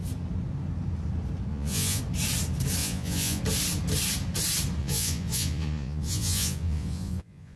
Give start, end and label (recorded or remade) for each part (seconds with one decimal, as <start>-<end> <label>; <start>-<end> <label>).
0.0-1.5 recorded; 1.5-2.0 remade; 2.0-2.8 recorded; 2.8-3.4 remade; 3.4-4.8 recorded; 4.8-7.6 remade